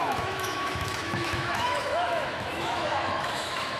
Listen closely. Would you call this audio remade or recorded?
remade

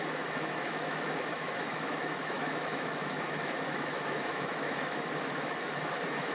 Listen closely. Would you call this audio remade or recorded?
remade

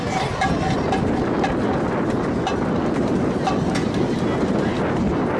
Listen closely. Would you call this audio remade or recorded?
recorded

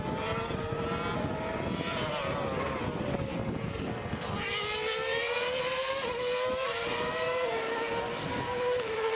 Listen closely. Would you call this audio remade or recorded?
recorded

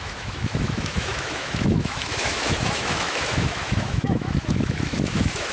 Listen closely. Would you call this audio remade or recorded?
remade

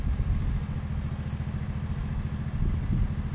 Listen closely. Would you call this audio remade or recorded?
recorded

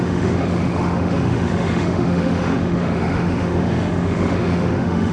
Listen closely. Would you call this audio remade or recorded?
remade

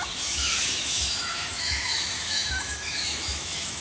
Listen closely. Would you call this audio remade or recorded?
remade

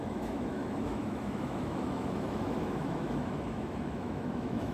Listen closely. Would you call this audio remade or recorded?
remade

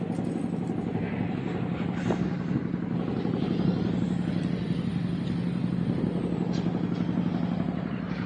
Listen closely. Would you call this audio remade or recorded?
recorded